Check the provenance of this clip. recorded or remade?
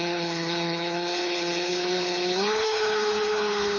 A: remade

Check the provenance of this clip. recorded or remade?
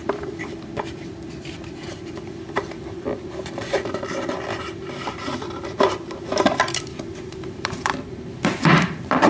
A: remade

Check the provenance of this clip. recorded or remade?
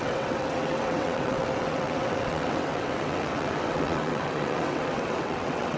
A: remade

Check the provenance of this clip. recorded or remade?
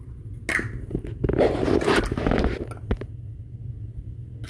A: recorded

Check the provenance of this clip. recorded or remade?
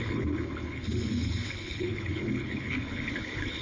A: remade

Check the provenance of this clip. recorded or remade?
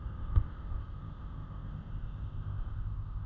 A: remade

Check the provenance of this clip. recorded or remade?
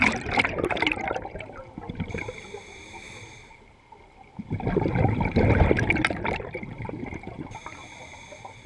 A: recorded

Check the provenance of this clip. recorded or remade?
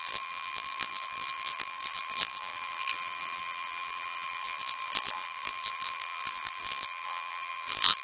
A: remade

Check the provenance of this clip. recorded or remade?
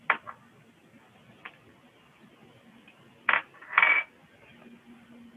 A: recorded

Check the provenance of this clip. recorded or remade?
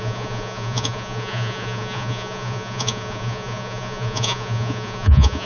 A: remade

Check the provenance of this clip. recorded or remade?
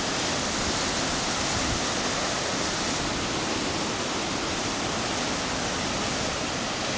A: recorded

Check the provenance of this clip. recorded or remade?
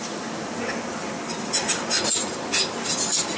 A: recorded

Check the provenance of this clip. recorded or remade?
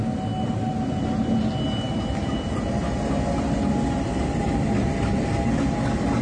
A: recorded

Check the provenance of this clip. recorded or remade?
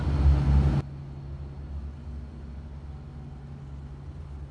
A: recorded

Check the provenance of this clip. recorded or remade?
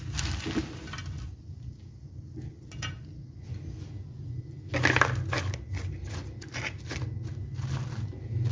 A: recorded